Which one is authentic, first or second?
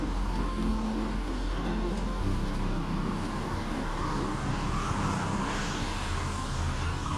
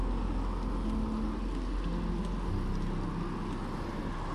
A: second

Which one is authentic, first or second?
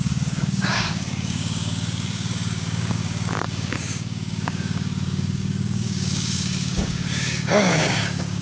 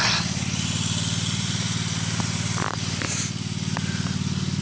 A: second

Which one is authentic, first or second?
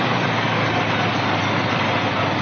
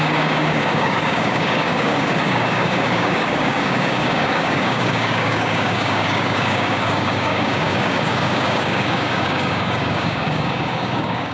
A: first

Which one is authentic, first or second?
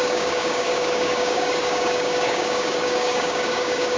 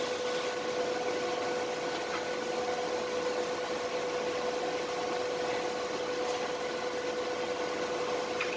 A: second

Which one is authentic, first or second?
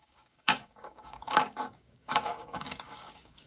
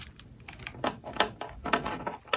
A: second